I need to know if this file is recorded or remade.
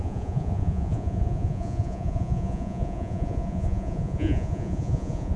remade